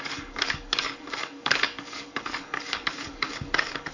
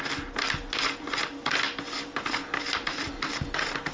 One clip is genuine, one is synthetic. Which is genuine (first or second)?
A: second